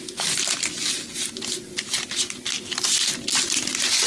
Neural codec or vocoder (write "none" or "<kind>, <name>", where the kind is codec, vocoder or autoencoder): none